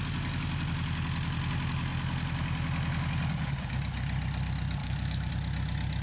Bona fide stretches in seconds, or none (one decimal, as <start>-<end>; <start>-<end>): 0.0-4.8; 5.3-6.0